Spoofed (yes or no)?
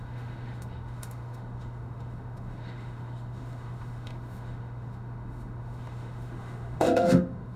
yes